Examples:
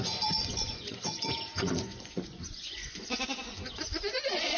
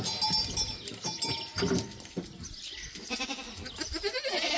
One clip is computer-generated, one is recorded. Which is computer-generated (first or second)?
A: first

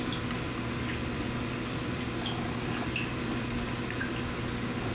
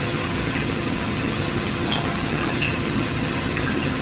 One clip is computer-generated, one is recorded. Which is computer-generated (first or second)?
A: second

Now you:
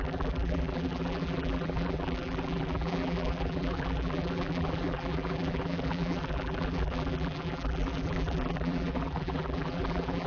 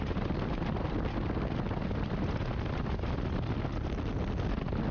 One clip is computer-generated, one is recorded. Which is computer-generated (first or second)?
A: first